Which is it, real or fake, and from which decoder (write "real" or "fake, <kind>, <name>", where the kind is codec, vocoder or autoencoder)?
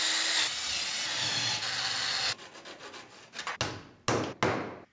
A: real